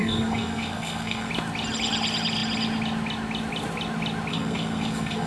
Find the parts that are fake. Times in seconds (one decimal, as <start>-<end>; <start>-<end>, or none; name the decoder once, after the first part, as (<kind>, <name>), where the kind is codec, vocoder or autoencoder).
0.0-1.3 (codec, SNAC); 4.3-5.3